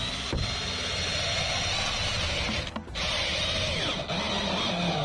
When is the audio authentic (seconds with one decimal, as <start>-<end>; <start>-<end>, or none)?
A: 0.0-5.0